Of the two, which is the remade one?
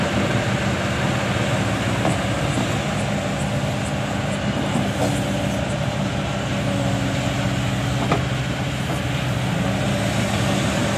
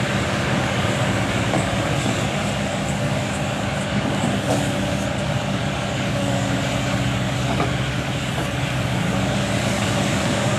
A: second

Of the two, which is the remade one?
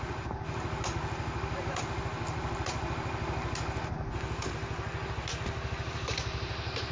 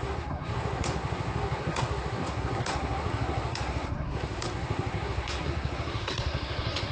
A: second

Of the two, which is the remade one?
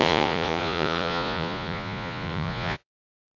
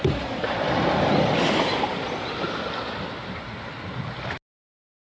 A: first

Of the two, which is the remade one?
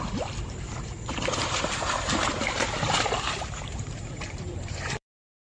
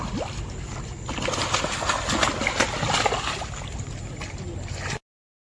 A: first